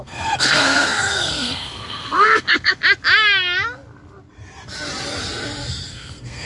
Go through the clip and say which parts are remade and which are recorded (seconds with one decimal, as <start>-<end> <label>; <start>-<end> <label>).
0.0-2.8 remade; 2.8-5.9 recorded; 5.9-6.5 remade